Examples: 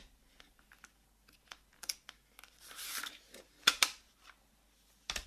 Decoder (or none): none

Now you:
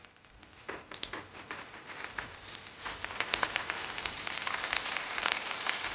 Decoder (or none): vocoder, BigVGAN v2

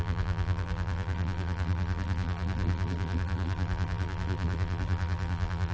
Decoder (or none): vocoder, BigVGAN v2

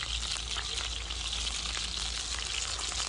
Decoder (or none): none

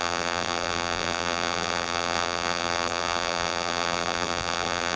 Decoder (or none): vocoder, BigVGAN v2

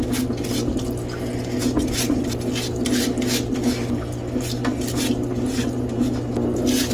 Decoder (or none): none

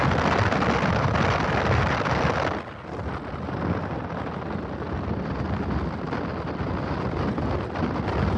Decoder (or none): none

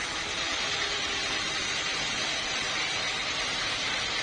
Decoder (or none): vocoder, BigVGAN v2